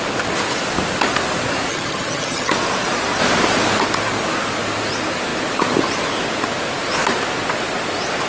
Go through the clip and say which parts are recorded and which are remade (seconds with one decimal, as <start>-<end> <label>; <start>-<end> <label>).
0.0-1.7 recorded; 1.7-2.5 remade; 2.5-8.3 recorded